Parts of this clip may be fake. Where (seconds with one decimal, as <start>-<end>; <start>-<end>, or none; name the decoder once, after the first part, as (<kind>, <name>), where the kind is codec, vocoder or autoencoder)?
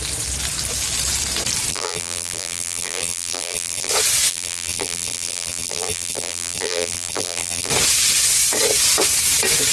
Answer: 1.7-3.9 (vocoder, BigVGAN v2); 4.3-7.7